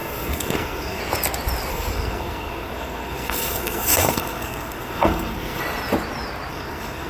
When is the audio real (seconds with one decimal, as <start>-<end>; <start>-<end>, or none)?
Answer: 1.0-1.7; 5.6-6.5